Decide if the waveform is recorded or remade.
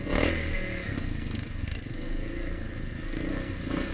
remade